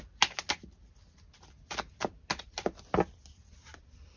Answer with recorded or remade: recorded